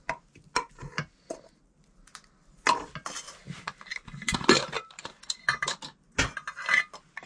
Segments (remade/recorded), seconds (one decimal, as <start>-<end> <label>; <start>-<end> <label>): 0.0-0.9 recorded; 0.9-1.6 remade; 1.6-4.3 recorded; 4.3-5.4 remade; 5.4-7.3 recorded